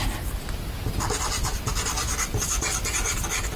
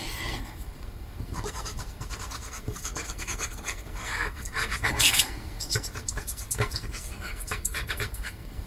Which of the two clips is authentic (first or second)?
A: first